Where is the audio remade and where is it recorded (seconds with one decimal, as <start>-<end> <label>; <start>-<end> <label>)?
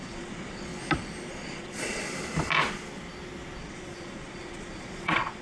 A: 0.0-0.7 remade; 0.7-1.3 recorded; 1.3-2.0 remade; 2.0-3.6 recorded; 3.6-5.4 remade